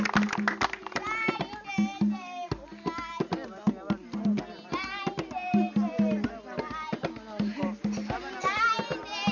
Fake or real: real